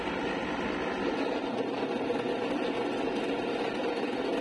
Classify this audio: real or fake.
real